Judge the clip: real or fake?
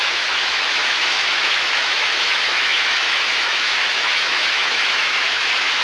fake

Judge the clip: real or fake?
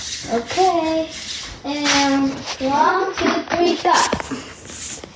real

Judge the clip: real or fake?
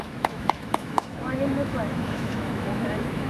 fake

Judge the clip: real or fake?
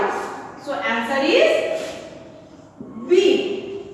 real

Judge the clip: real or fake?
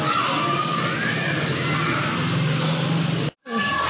real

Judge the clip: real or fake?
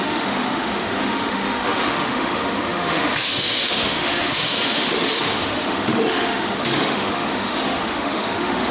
fake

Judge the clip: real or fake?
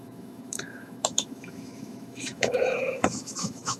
fake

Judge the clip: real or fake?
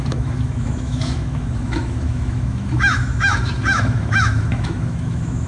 fake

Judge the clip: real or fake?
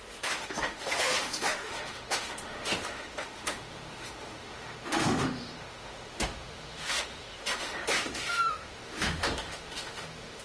fake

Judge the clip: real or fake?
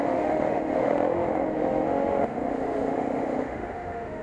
fake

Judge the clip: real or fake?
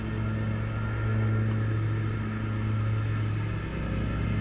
real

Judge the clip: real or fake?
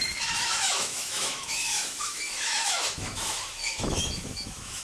fake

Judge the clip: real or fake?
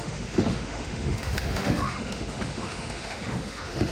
fake